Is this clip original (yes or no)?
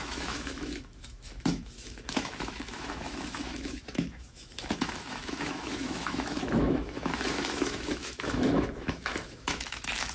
no